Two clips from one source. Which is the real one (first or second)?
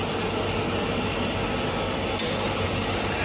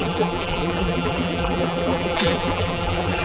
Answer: first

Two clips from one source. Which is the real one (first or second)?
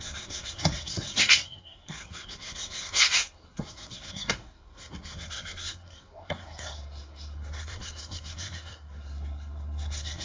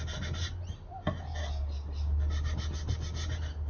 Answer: second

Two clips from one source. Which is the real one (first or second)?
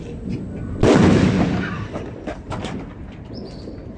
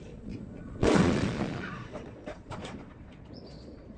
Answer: first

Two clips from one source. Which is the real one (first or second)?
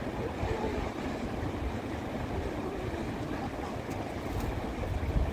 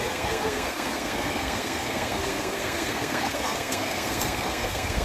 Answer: first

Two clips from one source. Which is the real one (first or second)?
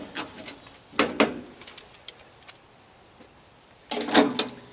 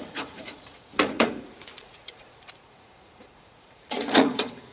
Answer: first